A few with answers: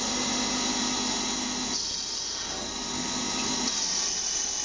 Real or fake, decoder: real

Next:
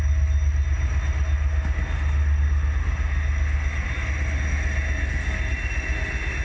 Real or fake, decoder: real